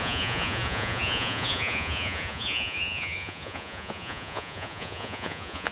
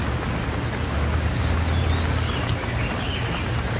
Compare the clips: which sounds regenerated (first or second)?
first